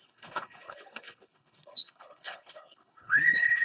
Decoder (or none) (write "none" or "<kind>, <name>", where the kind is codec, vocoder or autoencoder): codec, HILCodec